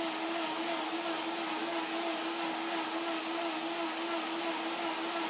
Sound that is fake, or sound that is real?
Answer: real